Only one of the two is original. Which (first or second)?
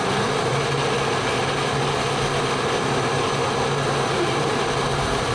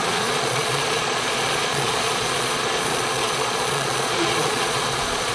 first